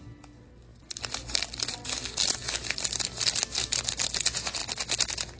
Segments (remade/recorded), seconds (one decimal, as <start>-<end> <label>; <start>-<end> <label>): 0.0-5.4 recorded